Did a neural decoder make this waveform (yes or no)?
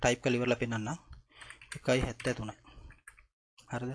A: no